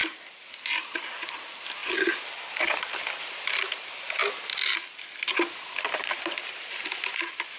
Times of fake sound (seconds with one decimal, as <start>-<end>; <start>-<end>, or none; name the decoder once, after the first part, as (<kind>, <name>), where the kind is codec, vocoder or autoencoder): 0.8-4.2 (vocoder, BigVGAN v2); 7.1-7.6